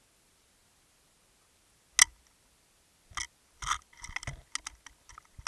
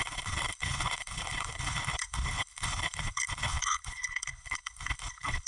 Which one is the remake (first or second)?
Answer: second